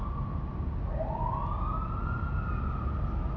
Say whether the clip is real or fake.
real